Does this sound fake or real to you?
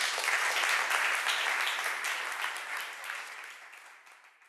real